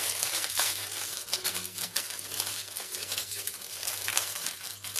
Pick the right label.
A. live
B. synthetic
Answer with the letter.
B